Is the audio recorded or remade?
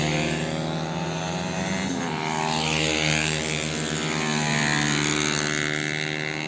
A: recorded